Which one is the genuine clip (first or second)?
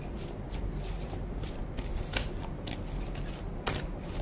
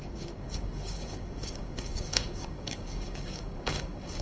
first